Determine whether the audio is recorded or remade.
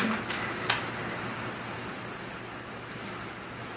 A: recorded